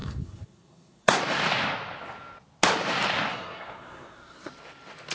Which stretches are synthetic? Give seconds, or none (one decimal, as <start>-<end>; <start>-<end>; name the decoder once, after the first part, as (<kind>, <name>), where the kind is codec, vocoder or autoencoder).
0.0-1.2 (codec, SNAC); 3.3-4.5